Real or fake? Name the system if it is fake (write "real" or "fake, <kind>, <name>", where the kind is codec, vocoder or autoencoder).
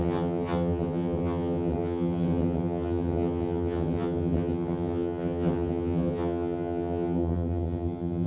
fake, vocoder, HiFi-GAN